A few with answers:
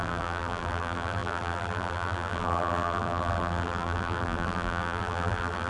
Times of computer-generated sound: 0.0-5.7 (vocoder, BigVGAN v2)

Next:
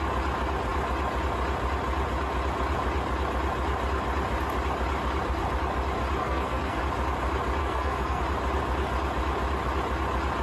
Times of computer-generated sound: 6.2-6.8 (codec, SNAC); 7.6-8.2

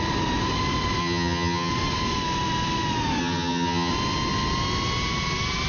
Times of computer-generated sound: 1.0-1.7 (vocoder, HiFi-GAN); 3.2-3.9

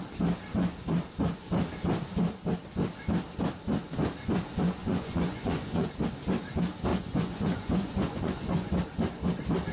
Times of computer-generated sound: 4.8-5.9 (vocoder, Vocos); 6.9-8.7

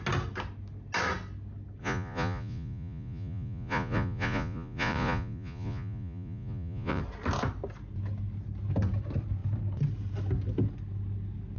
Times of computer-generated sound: 1.8-7.0 (vocoder, Vocos)

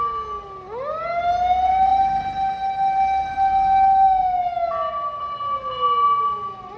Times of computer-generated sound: none

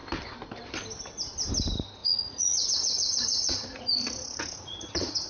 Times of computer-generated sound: 2.0-5.3 (vocoder, Vocos)

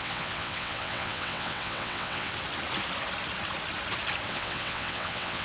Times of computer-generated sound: 0.0-2.3 (vocoder, WaveNeXt); 4.3-5.4